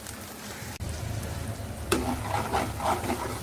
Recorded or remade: recorded